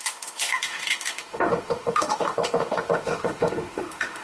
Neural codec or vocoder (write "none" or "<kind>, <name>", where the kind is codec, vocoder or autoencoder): autoencoder, DAC-VAE